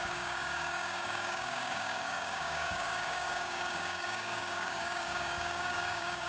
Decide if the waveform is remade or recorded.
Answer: remade